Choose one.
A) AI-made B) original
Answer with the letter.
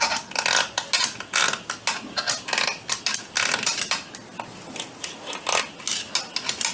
B